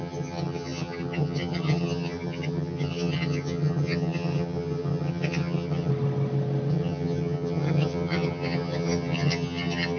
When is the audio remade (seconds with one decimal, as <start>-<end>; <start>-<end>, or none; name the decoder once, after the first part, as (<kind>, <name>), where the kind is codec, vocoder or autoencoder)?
0.0-5.9 (vocoder, HiFi-GAN); 6.7-10.0